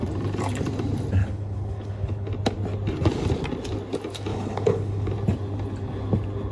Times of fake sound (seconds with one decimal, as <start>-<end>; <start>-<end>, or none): 1.2-2.3; 4.3-5.1